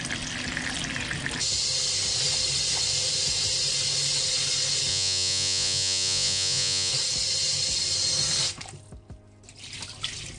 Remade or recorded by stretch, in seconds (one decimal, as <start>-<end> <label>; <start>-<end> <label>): 0.0-4.9 recorded; 4.9-6.9 remade; 6.9-10.4 recorded